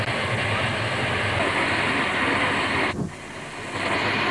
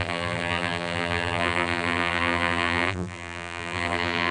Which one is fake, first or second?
second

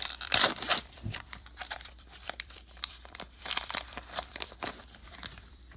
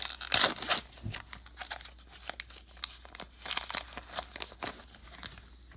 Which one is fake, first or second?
first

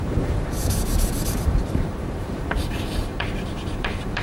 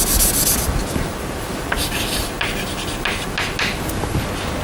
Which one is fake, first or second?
first